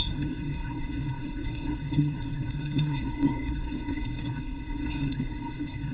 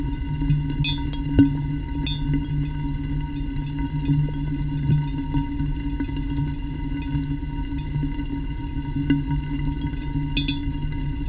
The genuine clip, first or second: second